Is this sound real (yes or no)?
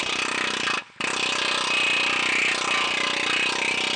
yes